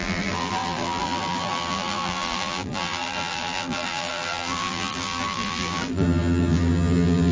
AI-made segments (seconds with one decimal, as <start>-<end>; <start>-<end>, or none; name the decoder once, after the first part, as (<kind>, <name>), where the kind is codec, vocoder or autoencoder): 0.0-7.3 (vocoder, BigVGAN v2)